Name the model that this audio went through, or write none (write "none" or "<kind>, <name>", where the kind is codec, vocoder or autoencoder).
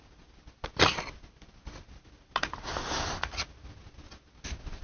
none